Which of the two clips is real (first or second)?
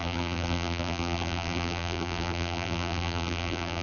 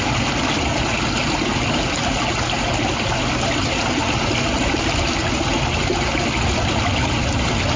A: second